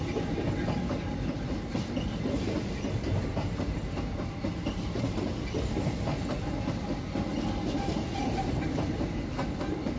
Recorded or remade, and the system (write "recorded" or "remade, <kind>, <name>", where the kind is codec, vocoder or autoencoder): recorded